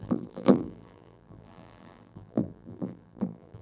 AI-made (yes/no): yes